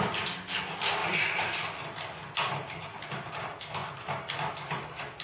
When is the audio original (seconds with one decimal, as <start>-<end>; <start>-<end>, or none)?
0.0-5.2